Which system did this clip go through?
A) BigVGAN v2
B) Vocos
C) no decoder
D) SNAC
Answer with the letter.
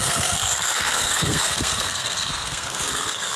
D